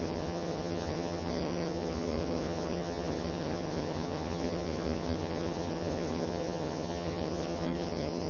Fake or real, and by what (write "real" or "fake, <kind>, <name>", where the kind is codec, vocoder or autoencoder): fake, vocoder, HiFi-GAN